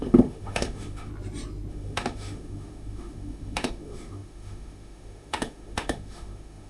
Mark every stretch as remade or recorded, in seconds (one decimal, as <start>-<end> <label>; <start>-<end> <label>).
0.0-1.1 remade; 1.1-1.7 recorded; 1.7-6.7 remade